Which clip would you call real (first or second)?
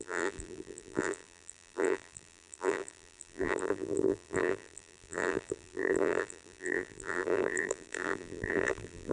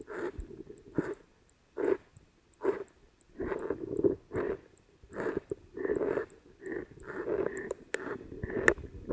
second